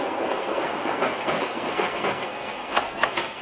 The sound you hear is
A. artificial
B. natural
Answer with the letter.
A